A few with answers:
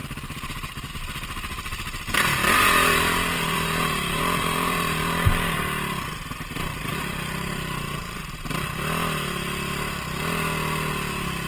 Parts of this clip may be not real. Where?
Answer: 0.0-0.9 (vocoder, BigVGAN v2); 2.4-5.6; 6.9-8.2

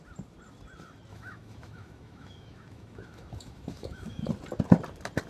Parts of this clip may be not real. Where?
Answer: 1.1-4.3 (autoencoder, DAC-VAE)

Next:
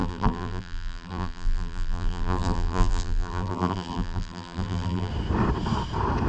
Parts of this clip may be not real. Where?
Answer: 0.0-5.1 (vocoder, BigVGAN v2)